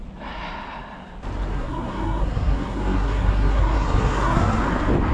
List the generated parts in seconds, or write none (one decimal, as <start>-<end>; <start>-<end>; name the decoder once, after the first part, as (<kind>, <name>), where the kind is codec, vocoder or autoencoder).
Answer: 1.5-4.6 (codec, SNAC)